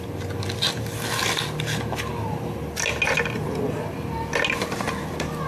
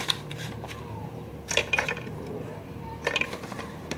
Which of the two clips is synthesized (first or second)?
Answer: second